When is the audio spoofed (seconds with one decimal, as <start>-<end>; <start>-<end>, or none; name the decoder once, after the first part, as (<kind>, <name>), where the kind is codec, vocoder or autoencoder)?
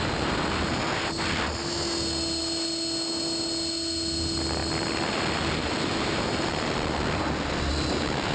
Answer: none